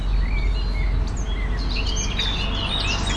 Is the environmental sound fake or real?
real